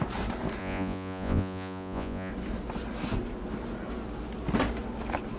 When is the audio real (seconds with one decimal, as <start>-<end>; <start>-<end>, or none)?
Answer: 0.0-0.6; 2.3-5.4

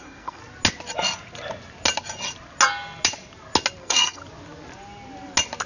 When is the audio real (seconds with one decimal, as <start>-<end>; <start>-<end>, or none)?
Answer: 0.4-3.8; 4.2-5.7

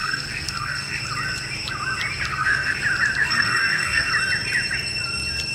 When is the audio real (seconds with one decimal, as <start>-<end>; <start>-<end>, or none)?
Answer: 1.0-2.3; 2.8-3.2; 4.1-5.5